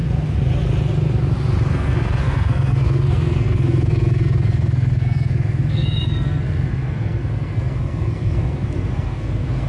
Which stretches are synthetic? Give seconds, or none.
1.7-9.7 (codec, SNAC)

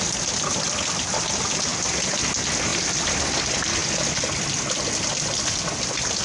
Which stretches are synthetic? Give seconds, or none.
2.7-3.4 (vocoder, BigVGAN v2)

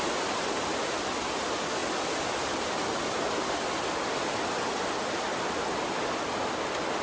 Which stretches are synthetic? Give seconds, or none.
none

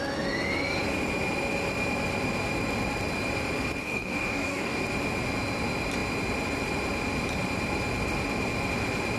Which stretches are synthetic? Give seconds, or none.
3.8-4.8 (codec, DAC)

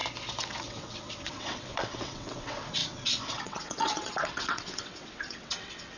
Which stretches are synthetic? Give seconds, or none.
0.6-6.0 (vocoder, WaveNeXt)

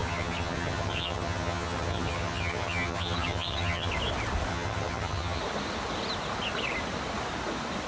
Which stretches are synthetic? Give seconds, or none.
0.0-3.9 (vocoder, HiFi-GAN); 4.5-5.4